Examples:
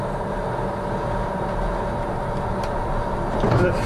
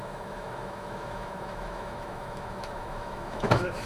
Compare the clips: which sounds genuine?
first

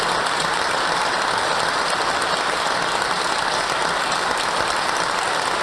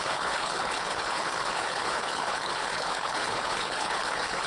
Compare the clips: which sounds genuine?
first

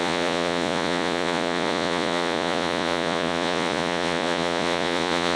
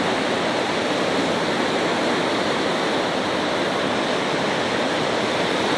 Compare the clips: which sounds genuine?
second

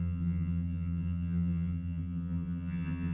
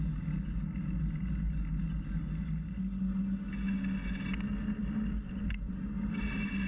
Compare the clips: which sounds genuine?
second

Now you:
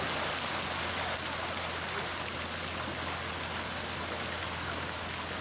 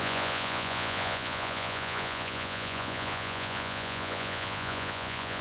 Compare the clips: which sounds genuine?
first